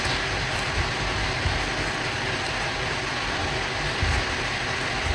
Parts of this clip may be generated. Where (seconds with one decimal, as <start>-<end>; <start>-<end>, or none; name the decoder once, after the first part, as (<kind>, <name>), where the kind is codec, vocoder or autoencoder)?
none